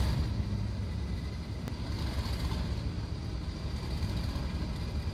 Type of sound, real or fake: real